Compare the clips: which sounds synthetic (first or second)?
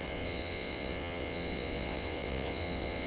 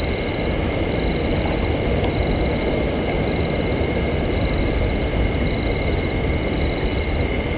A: first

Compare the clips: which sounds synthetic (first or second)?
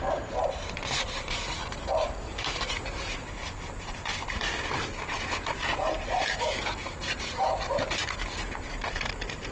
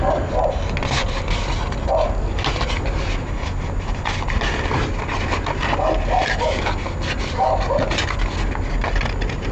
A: first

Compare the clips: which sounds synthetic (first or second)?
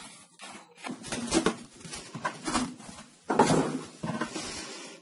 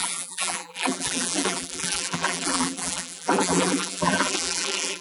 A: second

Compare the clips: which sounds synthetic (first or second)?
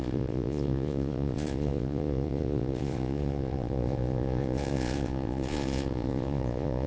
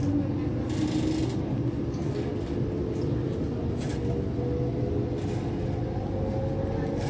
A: first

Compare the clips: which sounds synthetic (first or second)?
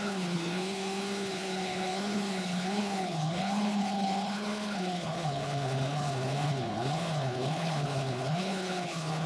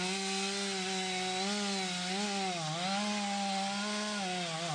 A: first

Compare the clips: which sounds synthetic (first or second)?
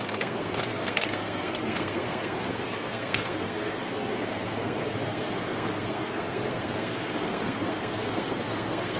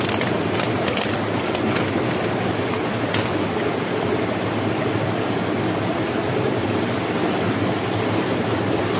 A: first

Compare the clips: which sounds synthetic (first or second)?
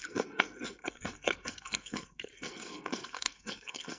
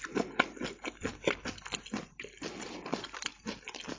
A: first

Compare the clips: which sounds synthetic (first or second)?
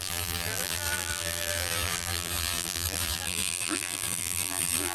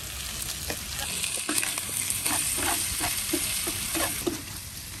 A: first